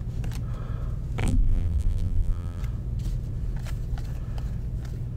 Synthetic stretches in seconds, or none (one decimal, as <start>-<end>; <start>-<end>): 1.2-2.6